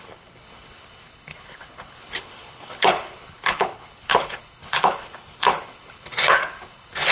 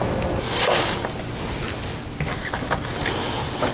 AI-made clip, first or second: first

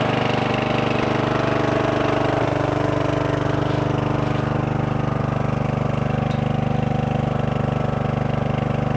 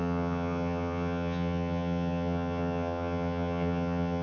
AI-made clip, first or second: second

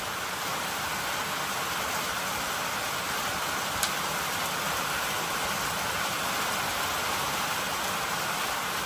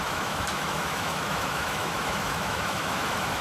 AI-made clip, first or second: second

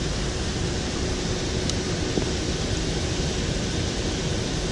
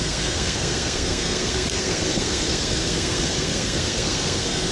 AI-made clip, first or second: second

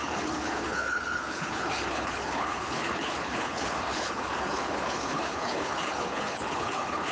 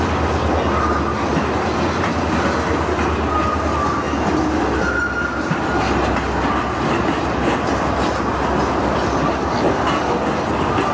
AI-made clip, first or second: first